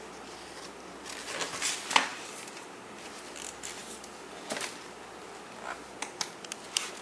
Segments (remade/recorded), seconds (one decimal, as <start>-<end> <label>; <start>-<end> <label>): 0.0-2.1 recorded; 2.1-3.2 remade; 3.2-7.0 recorded